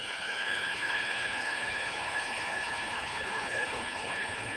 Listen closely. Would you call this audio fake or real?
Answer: fake